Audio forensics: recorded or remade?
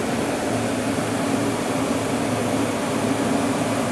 recorded